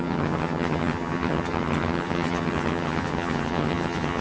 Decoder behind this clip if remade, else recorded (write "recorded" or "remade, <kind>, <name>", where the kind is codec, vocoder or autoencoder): remade, vocoder, HiFi-GAN